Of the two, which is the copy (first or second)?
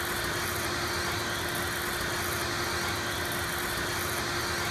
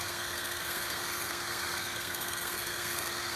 second